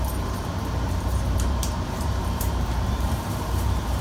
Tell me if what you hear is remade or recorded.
remade